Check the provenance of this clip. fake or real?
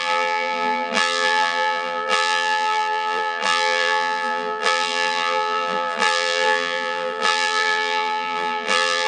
fake